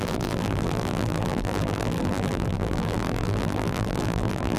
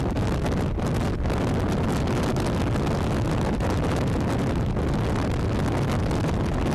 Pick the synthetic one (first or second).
first